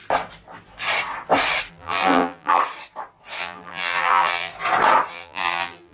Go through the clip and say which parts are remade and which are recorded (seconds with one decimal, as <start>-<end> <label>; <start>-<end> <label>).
0.0-1.7 recorded; 1.7-2.6 remade; 2.6-3.4 recorded; 3.4-4.5 remade; 4.5-5.1 recorded; 5.1-5.9 remade